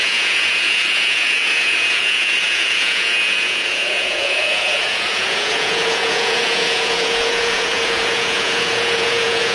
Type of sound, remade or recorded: remade